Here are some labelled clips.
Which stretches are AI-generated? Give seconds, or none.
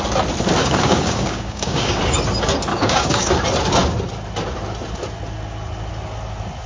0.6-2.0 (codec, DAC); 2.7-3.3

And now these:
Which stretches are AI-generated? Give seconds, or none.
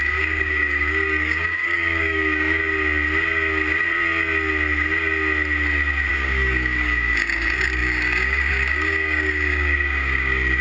0.0-2.6 (codec, DAC); 6.1-10.6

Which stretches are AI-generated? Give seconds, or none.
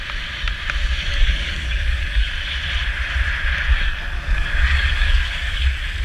1.1-2.3 (codec, DAC); 3.7-5.6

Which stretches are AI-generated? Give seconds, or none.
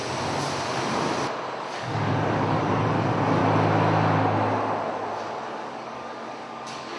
1.6-3.4 (codec, DAC); 5.4-7.0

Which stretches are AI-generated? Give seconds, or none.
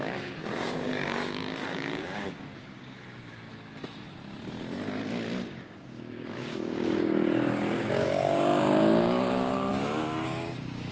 0.0-3.5 (codec, DAC); 5.4-10.9